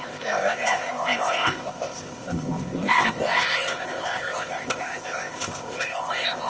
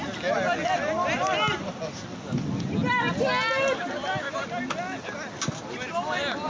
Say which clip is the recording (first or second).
second